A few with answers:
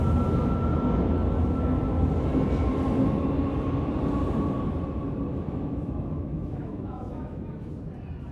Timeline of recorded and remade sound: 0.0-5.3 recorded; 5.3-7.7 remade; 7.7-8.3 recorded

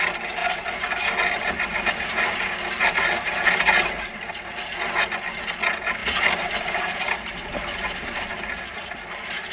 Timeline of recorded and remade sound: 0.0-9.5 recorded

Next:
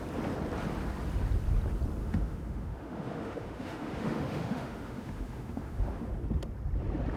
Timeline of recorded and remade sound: 0.0-2.0 recorded; 2.0-6.1 remade; 6.1-7.2 recorded